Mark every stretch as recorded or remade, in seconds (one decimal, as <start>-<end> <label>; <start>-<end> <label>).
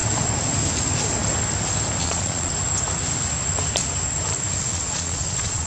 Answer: 0.0-2.0 recorded; 2.0-2.5 remade; 2.5-4.6 recorded; 4.6-5.7 remade